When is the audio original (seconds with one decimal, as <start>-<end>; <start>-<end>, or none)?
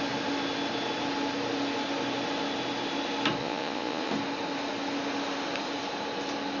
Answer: 0.0-3.4; 4.1-6.6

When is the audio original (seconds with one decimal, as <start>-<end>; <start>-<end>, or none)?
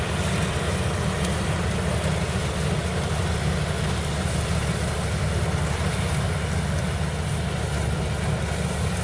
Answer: 0.0-9.0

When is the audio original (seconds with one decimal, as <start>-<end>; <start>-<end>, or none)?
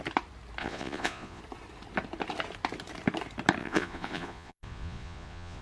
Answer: 0.0-0.6; 1.4-3.6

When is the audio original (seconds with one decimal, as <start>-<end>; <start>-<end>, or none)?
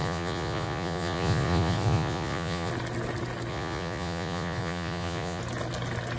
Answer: 2.7-3.5; 5.4-6.2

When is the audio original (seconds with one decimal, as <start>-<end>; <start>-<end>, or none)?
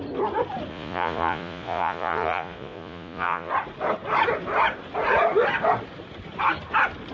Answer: 0.0-0.7; 3.5-7.1